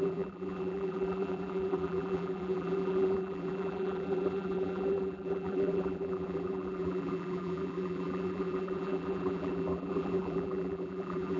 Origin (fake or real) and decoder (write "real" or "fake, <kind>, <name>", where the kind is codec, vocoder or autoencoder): fake, vocoder, BigVGAN v2